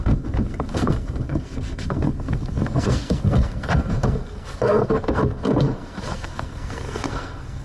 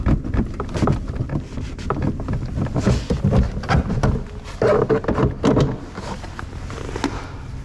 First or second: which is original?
second